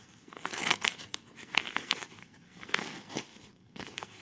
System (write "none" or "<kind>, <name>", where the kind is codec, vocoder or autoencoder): codec, SNAC